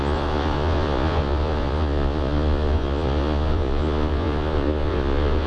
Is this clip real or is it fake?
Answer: fake